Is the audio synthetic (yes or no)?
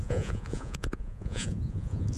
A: yes